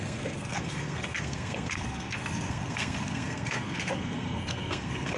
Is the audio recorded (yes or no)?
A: no